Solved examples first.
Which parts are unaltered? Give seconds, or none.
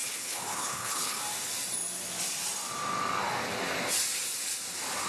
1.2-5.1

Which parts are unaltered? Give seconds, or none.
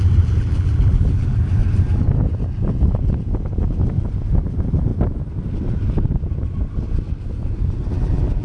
1.5-4.3; 4.9-7.9